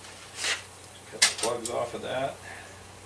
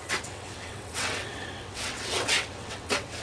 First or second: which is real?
first